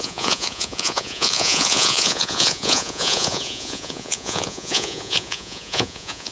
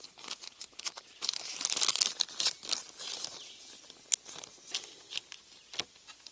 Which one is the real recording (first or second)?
second